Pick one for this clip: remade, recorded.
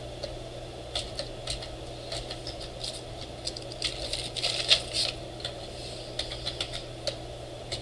recorded